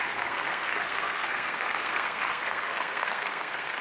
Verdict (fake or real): fake